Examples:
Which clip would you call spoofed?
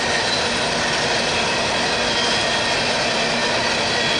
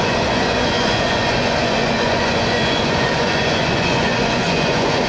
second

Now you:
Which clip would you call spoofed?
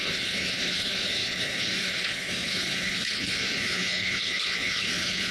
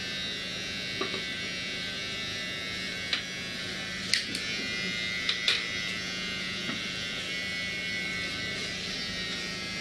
first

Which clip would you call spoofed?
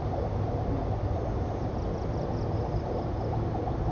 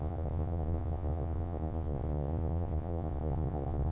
second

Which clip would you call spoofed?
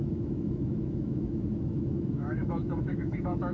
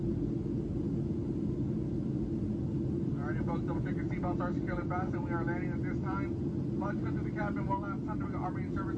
first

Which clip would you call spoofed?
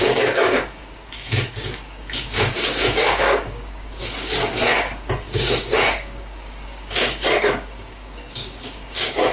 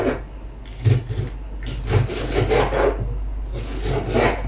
first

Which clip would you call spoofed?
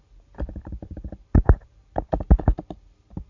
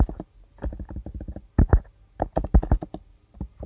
first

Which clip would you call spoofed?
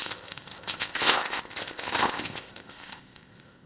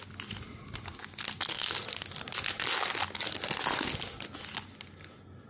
first